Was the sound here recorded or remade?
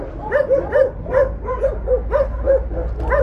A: recorded